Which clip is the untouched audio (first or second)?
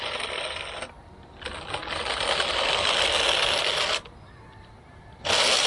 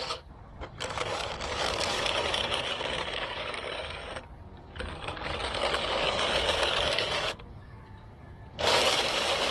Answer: first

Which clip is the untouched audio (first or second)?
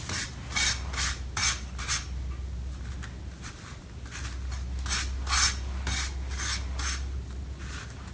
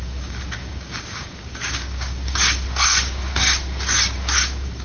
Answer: first